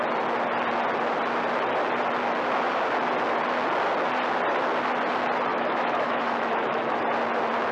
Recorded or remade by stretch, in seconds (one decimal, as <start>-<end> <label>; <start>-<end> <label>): 0.0-5.5 recorded; 5.5-7.0 remade; 7.0-7.7 recorded